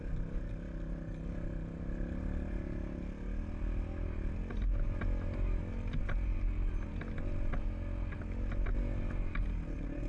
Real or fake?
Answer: real